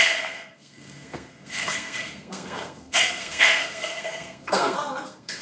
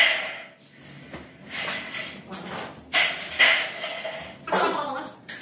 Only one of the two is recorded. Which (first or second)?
second